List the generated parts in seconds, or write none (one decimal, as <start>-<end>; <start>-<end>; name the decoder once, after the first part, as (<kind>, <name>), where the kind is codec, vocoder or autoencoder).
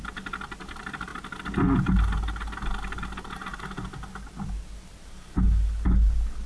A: none